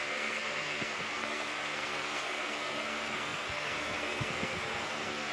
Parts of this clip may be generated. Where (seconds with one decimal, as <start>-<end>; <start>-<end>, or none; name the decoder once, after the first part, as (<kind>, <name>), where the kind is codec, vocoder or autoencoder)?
0.0-5.3 (codec, SNAC)